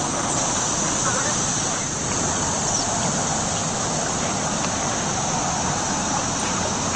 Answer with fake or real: real